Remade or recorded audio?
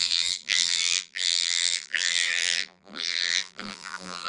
remade